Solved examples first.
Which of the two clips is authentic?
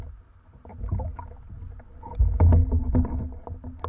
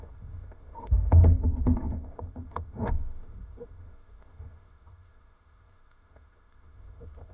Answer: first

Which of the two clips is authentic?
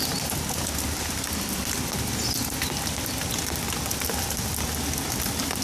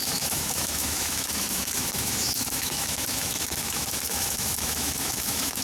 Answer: first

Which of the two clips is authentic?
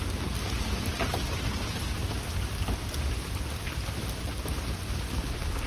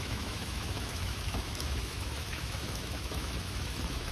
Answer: first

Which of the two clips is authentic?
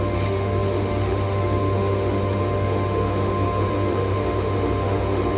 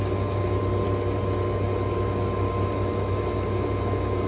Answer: second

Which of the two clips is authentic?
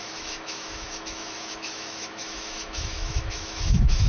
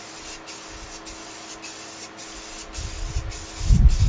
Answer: second